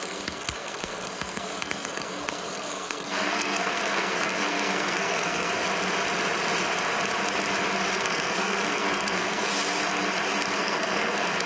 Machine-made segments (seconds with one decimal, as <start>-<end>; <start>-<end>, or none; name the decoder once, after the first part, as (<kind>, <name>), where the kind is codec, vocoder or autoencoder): 0.0-5.6 (codec, SNAC); 7.9-9.5; 10.5-11.5